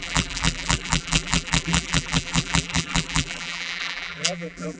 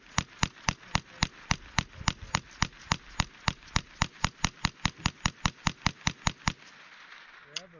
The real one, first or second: second